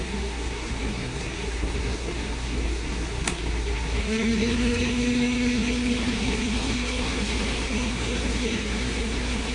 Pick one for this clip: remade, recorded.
remade